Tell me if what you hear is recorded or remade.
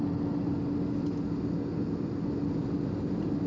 recorded